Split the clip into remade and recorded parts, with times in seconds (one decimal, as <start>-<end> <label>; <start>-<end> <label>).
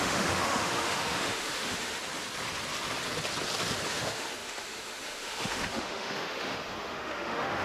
0.0-2.0 remade; 2.0-3.9 recorded; 3.9-7.6 remade